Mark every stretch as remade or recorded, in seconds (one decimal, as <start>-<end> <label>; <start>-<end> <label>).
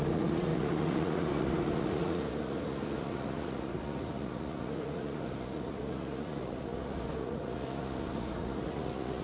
0.0-9.2 remade